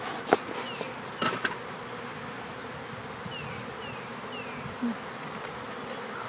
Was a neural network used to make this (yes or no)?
no